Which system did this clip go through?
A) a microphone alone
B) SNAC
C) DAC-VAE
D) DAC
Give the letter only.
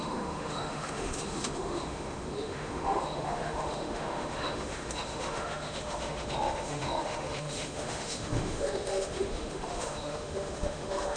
C